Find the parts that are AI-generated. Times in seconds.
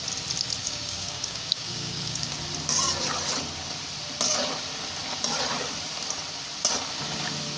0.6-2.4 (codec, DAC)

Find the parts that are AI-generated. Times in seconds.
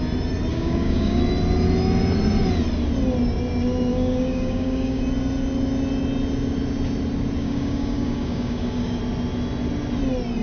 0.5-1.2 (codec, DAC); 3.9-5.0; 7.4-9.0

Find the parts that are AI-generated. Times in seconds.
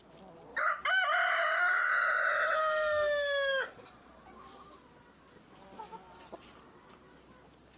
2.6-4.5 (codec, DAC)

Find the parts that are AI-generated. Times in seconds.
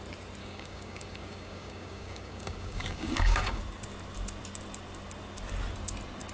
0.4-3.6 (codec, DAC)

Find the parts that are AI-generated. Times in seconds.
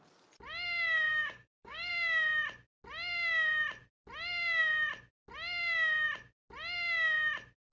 1.1-1.9 (codec, DAC)